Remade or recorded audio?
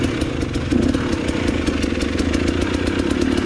recorded